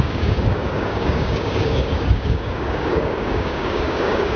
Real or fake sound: fake